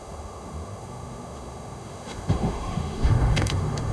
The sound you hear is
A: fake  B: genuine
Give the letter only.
A